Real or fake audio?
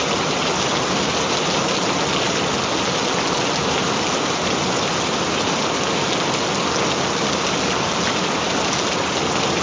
real